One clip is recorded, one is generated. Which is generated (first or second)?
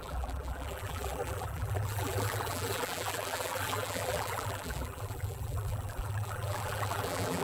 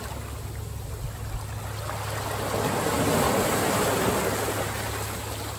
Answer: first